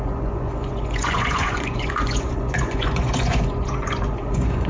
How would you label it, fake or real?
fake